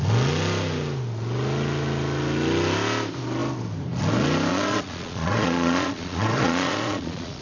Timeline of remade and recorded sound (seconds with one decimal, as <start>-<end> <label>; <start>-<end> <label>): 0.0-4.5 recorded; 4.5-7.4 remade